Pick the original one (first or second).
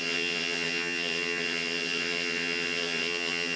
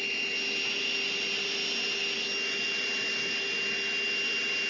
second